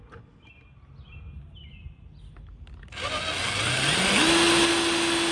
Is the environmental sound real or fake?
real